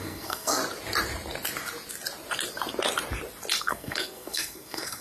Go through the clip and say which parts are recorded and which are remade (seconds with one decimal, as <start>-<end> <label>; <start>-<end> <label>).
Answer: 0.0-0.6 remade; 0.6-3.6 recorded; 3.6-5.0 remade